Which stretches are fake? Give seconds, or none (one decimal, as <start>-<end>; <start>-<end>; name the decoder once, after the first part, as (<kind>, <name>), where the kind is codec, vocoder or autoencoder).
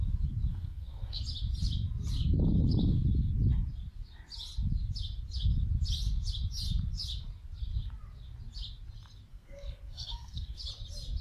0.5-1.2 (codec, SNAC); 9.3-10.6